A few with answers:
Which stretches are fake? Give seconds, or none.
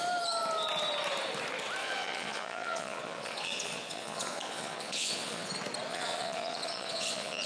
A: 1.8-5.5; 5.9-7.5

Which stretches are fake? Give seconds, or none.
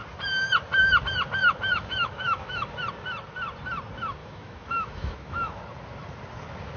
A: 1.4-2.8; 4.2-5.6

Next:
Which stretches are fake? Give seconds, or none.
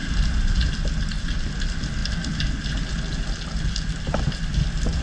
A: none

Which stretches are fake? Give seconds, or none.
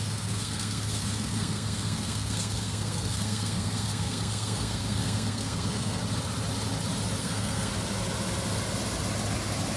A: 0.0-6.0; 7.2-7.7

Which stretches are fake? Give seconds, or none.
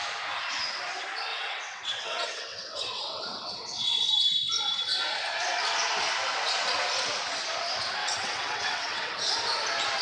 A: 1.3-4.1; 8.0-9.1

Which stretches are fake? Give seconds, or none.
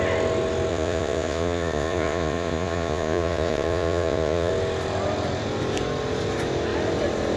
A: 0.7-4.5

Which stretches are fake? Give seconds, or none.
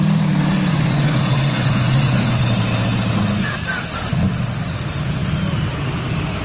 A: 0.7-2.4